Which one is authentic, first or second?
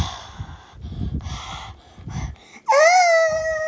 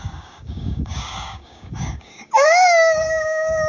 first